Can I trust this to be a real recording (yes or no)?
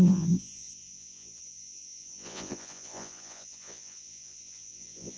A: no